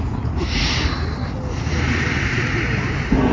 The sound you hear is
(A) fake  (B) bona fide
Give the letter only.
B